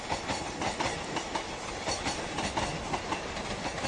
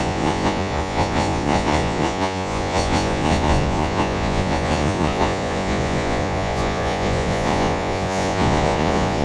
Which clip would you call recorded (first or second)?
first